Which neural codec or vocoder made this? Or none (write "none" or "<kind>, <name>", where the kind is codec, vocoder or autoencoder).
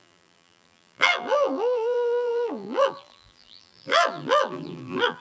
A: vocoder, BigVGAN v2